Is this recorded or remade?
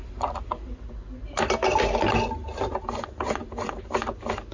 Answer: recorded